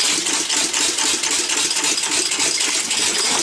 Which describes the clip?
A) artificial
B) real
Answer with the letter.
B